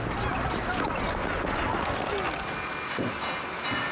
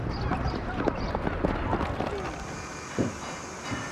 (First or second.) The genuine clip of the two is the first